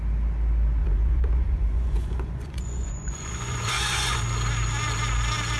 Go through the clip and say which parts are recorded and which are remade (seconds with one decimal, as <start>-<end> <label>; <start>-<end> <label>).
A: 0.0-0.8 recorded; 0.8-4.2 remade; 4.2-5.6 recorded